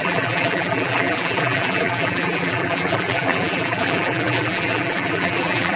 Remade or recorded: remade